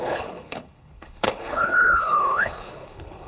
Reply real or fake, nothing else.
fake